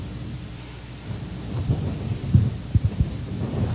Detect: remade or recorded remade